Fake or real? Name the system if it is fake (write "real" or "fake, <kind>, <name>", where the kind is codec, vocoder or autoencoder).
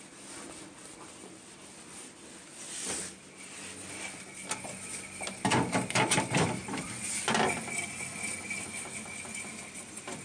real